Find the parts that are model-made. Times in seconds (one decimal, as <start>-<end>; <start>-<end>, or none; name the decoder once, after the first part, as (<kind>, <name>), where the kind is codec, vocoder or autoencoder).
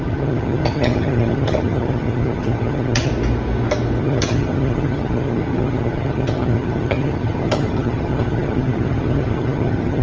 0.0-3.1 (vocoder, HiFi-GAN); 4.0-10.0